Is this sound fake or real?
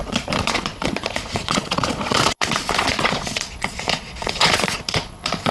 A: fake